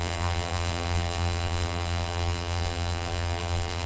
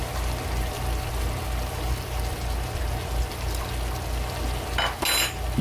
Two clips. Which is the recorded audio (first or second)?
second